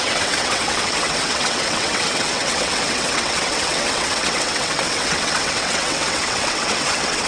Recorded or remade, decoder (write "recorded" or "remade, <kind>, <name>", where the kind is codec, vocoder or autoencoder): remade, vocoder, WaveNeXt